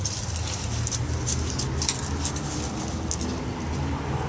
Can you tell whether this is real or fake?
real